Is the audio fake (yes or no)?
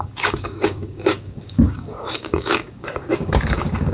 yes